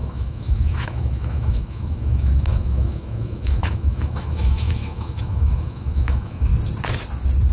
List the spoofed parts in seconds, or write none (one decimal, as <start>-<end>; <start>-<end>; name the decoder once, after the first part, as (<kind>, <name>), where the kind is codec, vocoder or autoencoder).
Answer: 0.0-6.5 (autoencoder, DAC-VAE)